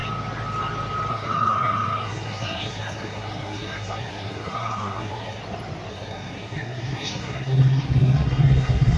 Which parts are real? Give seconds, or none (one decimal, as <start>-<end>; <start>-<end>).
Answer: 0.0-1.1; 5.4-5.9